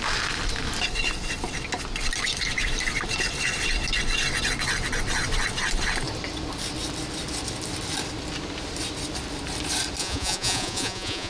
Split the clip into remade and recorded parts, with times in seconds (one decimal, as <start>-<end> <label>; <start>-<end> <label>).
0.0-10.0 recorded; 10.0-11.3 remade